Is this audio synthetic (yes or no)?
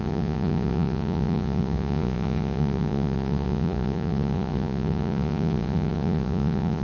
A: yes